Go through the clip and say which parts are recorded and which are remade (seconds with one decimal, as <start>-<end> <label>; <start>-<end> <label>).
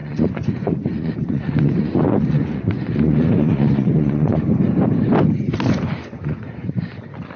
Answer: 0.0-4.4 remade; 4.4-6.0 recorded; 6.0-6.7 remade; 6.7-7.4 recorded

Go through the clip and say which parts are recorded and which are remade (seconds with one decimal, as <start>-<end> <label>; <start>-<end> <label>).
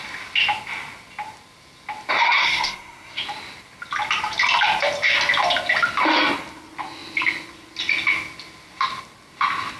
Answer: 0.0-2.4 recorded; 2.4-3.2 remade; 3.2-9.8 recorded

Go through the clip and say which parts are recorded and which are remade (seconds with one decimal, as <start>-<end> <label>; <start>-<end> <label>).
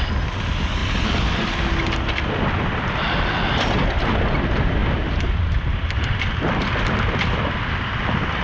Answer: 0.0-8.4 recorded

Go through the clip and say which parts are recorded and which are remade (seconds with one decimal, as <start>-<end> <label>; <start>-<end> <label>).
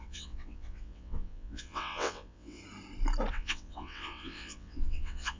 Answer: 0.0-2.6 remade; 2.6-3.3 recorded; 3.3-5.4 remade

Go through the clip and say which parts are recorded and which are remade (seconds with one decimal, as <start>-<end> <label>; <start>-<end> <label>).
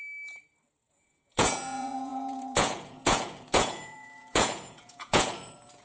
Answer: 0.0-0.9 recorded; 0.9-5.8 remade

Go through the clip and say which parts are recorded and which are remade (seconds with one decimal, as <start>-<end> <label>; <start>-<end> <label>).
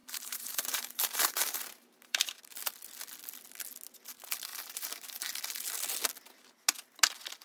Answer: 0.0-2.4 remade; 2.4-4.5 recorded; 4.5-5.3 remade; 5.3-7.4 recorded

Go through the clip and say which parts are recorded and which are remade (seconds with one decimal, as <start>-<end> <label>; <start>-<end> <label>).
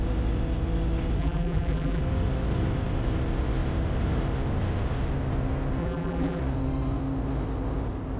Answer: 0.0-1.2 recorded; 1.2-2.0 remade; 2.0-5.8 recorded; 5.8-6.4 remade; 6.4-8.2 recorded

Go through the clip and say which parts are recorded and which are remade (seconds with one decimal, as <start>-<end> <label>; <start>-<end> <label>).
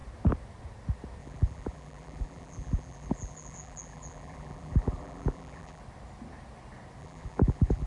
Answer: 0.0-1.2 recorded; 1.2-5.8 remade; 5.8-7.0 recorded; 7.0-7.9 remade